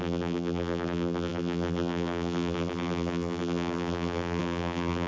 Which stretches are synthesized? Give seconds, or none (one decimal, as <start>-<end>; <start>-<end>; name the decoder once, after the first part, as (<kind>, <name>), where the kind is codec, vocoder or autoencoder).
0.0-5.1 (vocoder, BigVGAN v2)